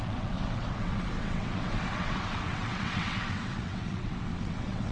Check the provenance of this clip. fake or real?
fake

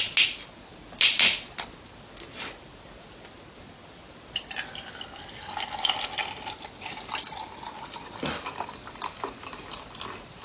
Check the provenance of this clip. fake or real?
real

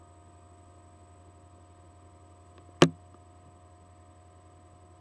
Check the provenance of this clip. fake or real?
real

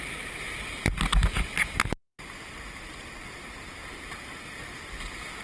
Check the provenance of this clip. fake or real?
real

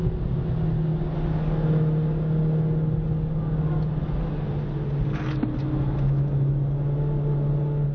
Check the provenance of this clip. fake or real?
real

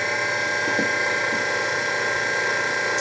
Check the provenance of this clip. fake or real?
real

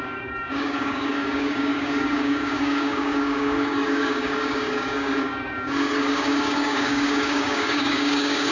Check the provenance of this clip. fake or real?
fake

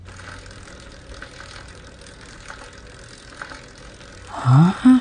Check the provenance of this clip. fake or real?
real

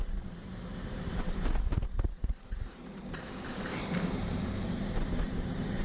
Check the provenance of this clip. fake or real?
fake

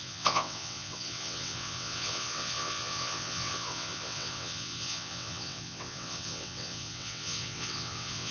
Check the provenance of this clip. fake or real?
fake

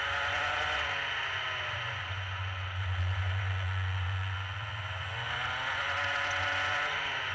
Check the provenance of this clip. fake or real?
fake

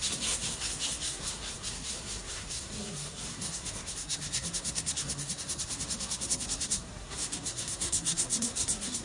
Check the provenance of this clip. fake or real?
fake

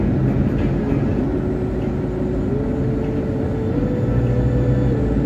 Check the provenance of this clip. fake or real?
real